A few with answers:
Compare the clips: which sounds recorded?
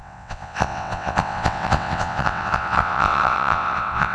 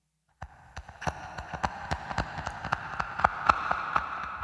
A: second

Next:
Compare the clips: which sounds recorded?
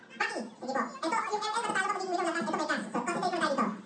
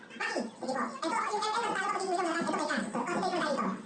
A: first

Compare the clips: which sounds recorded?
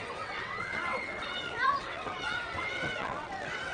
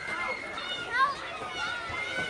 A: second